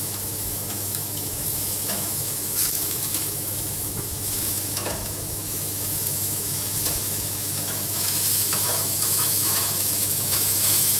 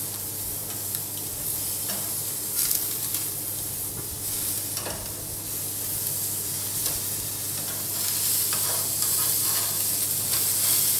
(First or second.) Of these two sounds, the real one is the second